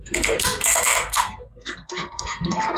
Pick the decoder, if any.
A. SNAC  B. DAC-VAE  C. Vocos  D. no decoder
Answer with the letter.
A